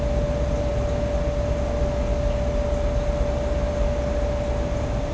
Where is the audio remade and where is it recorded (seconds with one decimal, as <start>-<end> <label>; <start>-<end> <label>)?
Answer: 0.0-5.1 recorded